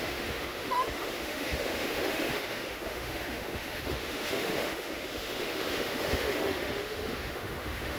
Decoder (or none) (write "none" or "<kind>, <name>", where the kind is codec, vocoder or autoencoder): autoencoder, DAC-VAE